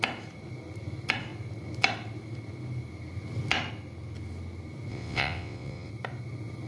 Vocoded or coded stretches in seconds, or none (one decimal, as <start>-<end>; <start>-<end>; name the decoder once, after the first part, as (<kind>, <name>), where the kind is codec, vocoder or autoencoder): 4.9-5.9 (vocoder, WaveNeXt)